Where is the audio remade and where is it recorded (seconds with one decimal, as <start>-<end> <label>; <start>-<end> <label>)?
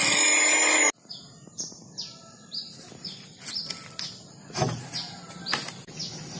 0.0-6.4 recorded